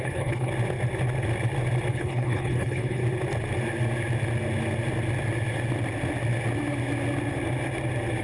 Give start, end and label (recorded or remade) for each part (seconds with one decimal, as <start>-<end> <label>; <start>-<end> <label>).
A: 0.0-0.5 remade; 0.5-1.9 recorded; 1.9-3.0 remade; 3.0-8.2 recorded